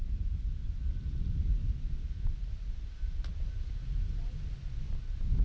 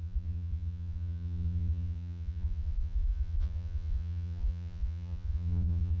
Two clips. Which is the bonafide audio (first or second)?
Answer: first